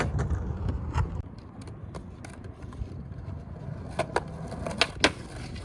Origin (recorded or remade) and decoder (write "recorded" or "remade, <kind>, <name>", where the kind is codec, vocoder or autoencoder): recorded